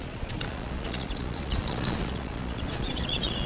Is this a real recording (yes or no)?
no